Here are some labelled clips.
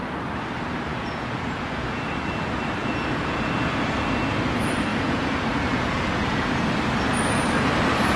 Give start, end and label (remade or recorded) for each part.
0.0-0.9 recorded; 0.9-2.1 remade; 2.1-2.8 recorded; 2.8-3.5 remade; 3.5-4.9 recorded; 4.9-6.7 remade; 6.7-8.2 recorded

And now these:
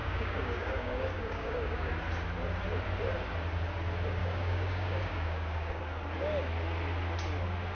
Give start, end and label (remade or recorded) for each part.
0.0-1.9 remade; 1.9-4.2 recorded; 4.2-5.8 remade; 5.8-7.7 recorded

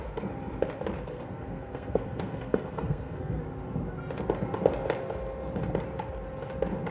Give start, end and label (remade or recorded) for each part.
0.0-1.0 recorded; 1.0-3.4 remade; 3.4-6.9 recorded

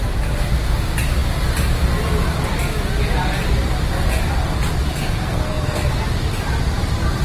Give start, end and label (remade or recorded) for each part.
0.0-5.0 recorded; 5.0-5.9 remade; 5.9-7.2 recorded

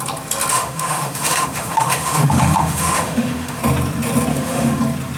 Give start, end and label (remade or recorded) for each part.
0.0-0.5 recorded; 0.5-3.6 remade; 3.6-4.3 recorded; 4.3-4.8 remade; 4.8-5.2 recorded

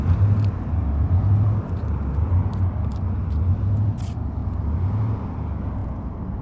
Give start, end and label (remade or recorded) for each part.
0.0-6.4 recorded

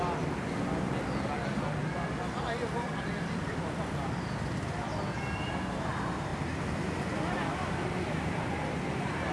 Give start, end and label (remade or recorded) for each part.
0.0-9.3 recorded